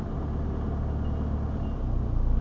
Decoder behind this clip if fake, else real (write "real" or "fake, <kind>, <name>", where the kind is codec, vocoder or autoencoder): real